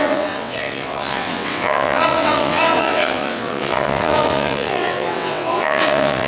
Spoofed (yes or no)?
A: yes